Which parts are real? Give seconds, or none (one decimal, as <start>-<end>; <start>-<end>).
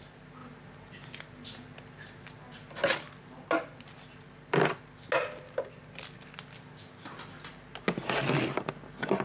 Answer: 0.0-9.2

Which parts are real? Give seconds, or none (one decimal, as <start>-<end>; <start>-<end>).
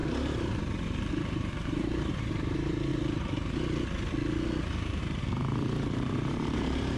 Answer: 2.9-5.0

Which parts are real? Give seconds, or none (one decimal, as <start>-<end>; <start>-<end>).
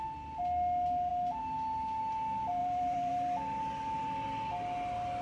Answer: 0.0-2.6; 3.1-5.2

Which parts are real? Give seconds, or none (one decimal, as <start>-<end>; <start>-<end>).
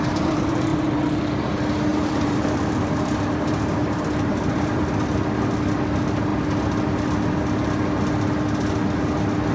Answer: 0.0-1.9; 4.9-9.5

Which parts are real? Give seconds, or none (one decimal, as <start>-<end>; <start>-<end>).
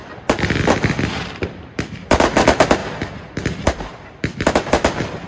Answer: 2.4-2.8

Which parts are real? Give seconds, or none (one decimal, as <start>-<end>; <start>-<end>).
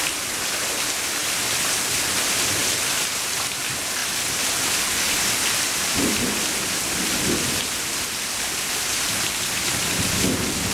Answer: 0.0-10.7